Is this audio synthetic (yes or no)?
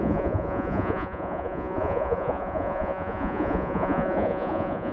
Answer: yes